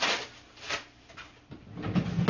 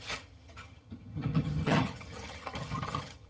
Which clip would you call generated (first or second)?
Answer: second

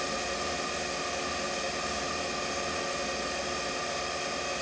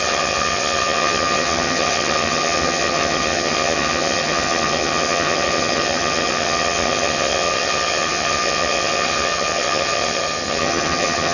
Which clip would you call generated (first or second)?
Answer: second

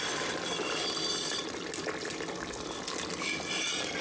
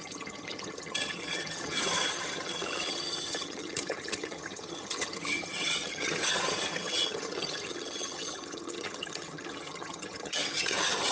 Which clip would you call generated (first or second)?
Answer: second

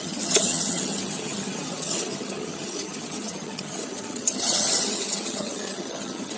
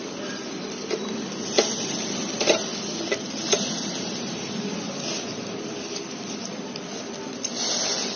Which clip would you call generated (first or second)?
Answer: first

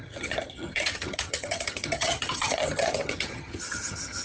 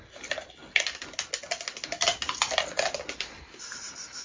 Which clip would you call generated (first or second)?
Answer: first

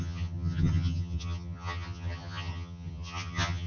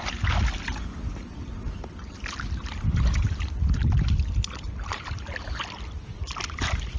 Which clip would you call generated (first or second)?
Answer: first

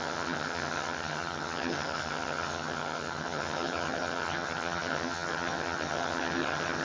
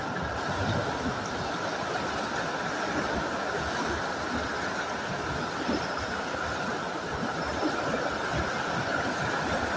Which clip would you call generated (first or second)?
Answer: first